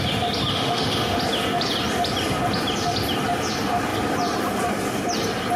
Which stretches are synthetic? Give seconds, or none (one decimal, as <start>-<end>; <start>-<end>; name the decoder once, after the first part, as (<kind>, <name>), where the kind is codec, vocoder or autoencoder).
0.5-1.2 (autoencoder, DAC-VAE)